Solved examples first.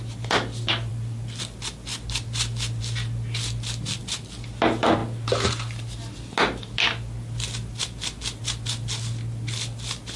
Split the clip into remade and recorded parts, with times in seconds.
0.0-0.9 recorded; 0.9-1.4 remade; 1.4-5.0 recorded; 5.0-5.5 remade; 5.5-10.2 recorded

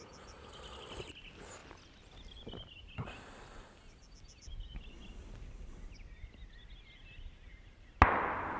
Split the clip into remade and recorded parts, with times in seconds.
0.0-8.6 recorded